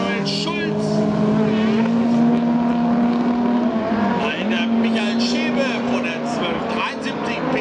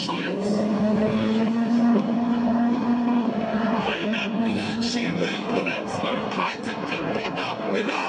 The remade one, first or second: second